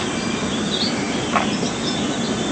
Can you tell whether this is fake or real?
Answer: real